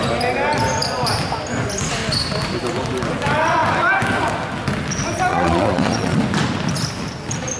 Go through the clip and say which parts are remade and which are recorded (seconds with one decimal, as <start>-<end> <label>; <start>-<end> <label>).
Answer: 0.0-5.3 recorded; 5.3-6.2 remade; 6.2-7.6 recorded